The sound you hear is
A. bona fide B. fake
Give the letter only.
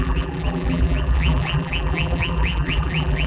B